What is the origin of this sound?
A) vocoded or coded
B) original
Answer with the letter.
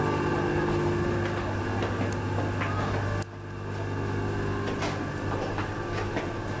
B